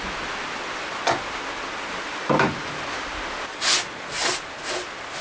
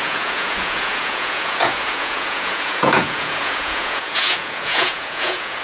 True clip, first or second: first